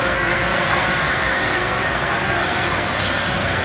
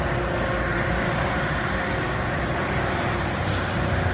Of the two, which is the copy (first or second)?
first